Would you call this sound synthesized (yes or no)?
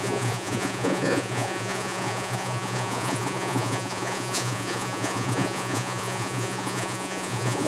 yes